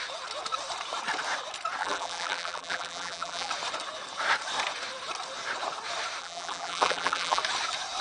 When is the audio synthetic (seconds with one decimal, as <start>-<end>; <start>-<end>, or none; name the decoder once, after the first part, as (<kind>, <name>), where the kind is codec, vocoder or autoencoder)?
1.8-3.5 (vocoder, BigVGAN v2); 6.2-7.4